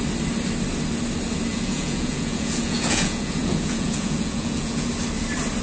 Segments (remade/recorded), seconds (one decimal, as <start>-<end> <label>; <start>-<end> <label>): 0.0-1.5 recorded; 1.5-4.9 remade; 4.9-5.6 recorded